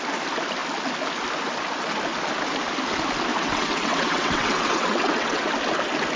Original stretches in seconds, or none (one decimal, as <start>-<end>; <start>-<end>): 0.0-3.3; 5.5-6.2